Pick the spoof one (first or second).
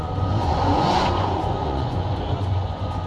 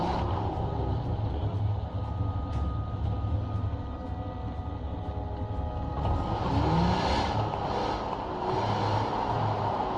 first